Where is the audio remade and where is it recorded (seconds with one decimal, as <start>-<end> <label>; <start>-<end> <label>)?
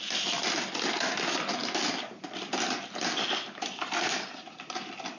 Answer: 0.0-5.2 recorded